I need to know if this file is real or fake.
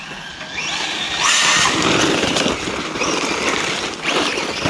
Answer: real